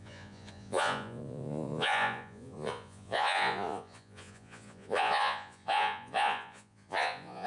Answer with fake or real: fake